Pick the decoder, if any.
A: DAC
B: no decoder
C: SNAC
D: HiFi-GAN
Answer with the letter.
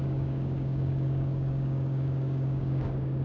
A